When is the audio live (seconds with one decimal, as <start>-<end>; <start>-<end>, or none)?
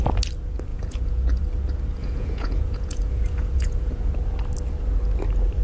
0.0-0.7; 1.4-2.0; 4.1-5.6